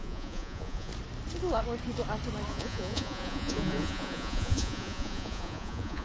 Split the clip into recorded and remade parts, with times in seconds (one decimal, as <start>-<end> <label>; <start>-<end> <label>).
0.0-0.9 remade; 0.9-2.5 recorded; 2.5-6.0 remade